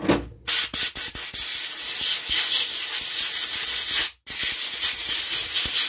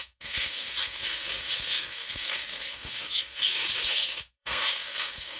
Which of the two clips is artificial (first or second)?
second